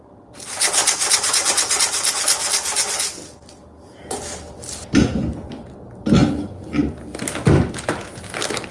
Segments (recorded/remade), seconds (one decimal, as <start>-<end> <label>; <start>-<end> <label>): 0.0-6.2 recorded; 6.2-7.9 remade; 7.9-8.7 recorded